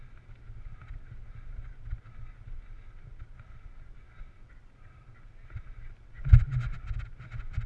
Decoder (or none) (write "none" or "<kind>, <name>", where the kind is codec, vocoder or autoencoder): none